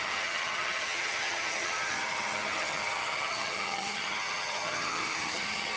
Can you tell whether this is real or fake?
fake